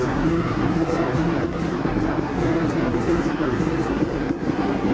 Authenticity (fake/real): fake